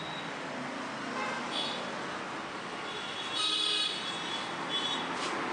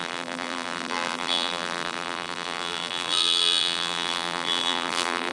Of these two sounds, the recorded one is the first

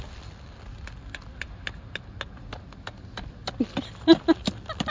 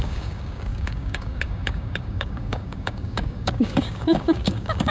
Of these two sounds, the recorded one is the first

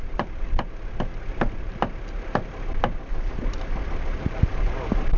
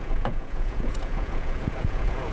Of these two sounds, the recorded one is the first